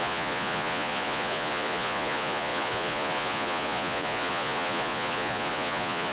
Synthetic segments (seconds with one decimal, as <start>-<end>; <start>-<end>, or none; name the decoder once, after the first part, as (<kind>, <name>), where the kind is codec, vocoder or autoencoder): 0.0-6.1 (vocoder, Vocos)